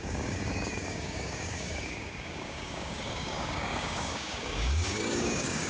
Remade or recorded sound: remade